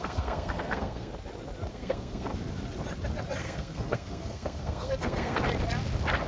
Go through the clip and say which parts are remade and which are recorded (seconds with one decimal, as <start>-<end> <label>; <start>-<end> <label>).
0.0-1.1 remade; 1.1-1.7 recorded; 1.7-2.3 remade; 2.3-3.4 recorded; 3.4-5.4 remade; 5.4-6.3 recorded